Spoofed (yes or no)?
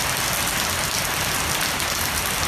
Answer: no